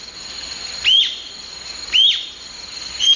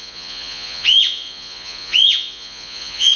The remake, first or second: second